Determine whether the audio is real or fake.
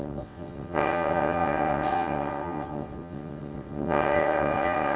fake